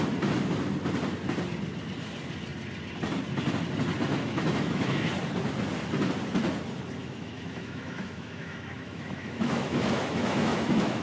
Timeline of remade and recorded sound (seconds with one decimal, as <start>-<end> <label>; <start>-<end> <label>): 0.0-4.1 recorded; 4.1-5.1 remade; 5.1-7.0 recorded; 7.0-11.0 remade